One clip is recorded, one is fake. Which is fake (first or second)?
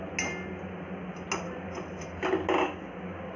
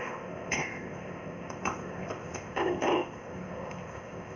second